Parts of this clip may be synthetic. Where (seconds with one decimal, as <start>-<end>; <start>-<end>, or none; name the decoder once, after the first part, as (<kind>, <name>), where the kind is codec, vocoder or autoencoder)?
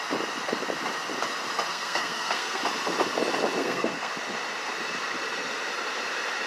1.7-2.6 (codec, SNAC); 3.6-4.1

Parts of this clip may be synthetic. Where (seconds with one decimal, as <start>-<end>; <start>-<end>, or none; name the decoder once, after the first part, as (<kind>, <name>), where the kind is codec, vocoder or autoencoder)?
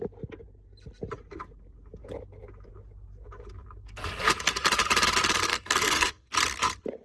5.5-6.3 (codec, SNAC)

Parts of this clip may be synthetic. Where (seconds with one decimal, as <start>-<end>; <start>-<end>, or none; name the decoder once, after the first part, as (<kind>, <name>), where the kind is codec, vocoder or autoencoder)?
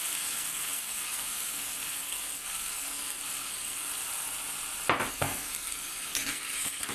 0.0-3.9 (codec, SNAC); 5.1-6.9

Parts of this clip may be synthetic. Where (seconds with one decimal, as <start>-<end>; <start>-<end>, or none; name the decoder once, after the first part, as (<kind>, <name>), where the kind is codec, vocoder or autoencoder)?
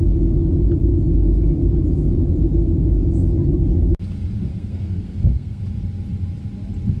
4.5-5.6 (codec, SNAC)